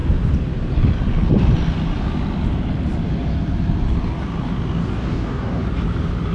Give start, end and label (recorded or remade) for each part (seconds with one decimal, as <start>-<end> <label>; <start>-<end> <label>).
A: 0.0-4.8 recorded; 4.8-5.6 remade; 5.6-6.3 recorded